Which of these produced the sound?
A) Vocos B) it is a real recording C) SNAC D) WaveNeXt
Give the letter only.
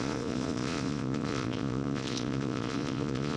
A